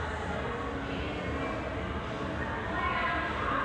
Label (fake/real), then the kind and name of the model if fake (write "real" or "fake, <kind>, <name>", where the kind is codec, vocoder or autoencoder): real